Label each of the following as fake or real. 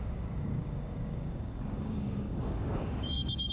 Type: fake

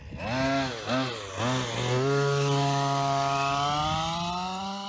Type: real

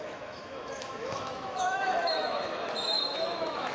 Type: fake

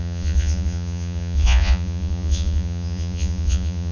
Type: fake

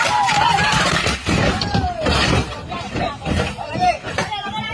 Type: fake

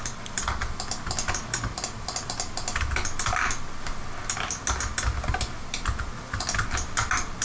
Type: real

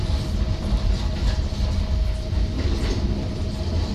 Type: real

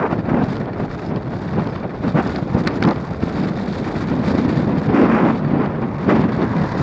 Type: real